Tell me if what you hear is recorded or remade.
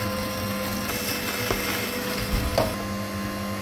recorded